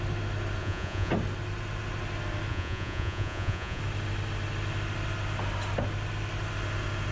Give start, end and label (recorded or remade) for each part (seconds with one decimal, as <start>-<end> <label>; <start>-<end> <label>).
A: 0.0-0.6 recorded; 0.6-1.1 remade; 1.1-2.5 recorded; 2.5-3.8 remade; 3.8-7.1 recorded